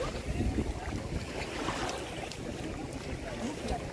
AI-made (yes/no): no